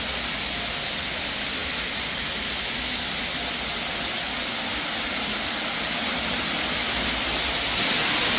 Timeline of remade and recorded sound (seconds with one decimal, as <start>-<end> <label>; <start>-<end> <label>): 0.0-8.4 recorded